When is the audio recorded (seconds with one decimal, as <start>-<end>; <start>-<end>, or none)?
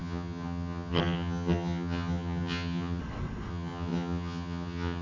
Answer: 3.0-3.5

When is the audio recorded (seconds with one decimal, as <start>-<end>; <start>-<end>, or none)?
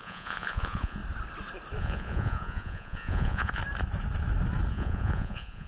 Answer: 1.0-1.8; 3.6-4.7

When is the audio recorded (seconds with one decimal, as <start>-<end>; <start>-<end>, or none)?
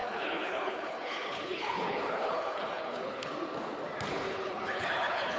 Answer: 3.3-4.1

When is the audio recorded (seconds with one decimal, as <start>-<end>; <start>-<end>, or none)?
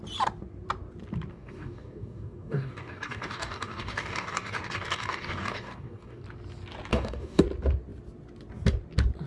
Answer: 0.0-1.3; 6.2-6.9; 7.4-9.3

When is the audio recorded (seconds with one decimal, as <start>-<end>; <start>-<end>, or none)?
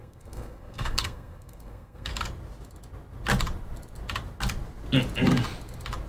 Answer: 2.1-6.1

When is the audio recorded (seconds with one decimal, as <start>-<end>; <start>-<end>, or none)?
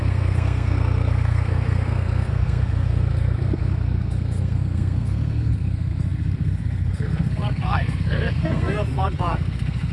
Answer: none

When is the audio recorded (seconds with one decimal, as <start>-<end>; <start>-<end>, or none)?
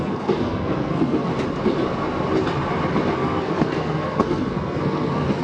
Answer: 1.3-3.1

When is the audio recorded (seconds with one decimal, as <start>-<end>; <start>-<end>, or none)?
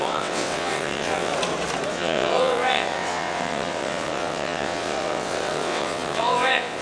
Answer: 1.3-1.9